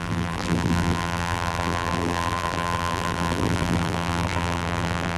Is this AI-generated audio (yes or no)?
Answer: yes